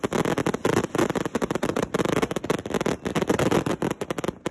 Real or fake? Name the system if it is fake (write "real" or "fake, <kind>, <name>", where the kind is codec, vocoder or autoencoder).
real